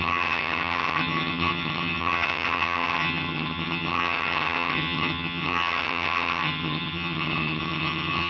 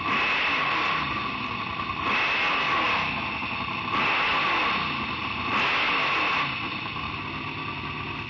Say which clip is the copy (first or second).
first